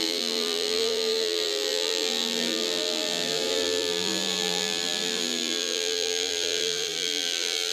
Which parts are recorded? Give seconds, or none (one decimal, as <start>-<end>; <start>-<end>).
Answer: none